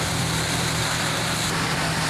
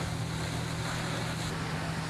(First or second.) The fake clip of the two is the first